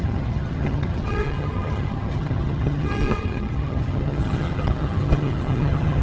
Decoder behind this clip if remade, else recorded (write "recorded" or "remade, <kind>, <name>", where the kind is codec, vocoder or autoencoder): remade, vocoder, HiFi-GAN